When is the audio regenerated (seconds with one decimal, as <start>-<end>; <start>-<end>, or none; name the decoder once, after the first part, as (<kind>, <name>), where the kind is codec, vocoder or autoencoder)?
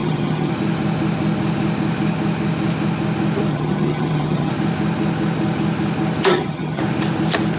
0.0-0.5 (vocoder, HiFi-GAN); 3.5-4.5; 6.3-6.8